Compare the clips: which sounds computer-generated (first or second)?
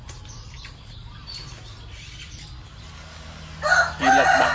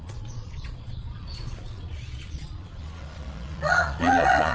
second